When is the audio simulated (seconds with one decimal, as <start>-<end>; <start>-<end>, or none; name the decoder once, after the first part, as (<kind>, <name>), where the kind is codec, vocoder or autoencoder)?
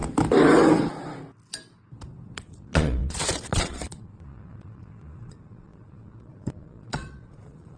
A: 2.4-7.8 (vocoder, Vocos)